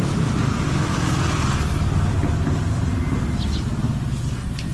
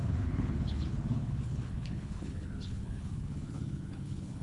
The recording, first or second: first